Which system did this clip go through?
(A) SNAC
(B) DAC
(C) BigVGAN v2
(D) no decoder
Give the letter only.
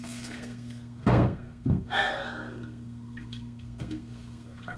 A